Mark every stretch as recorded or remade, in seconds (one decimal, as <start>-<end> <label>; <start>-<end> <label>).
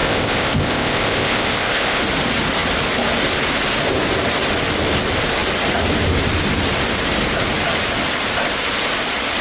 0.0-2.0 remade; 2.0-9.4 recorded